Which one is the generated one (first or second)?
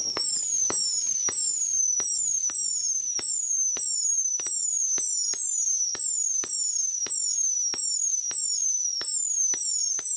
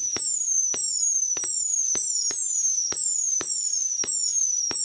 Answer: second